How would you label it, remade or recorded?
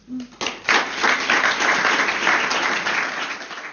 recorded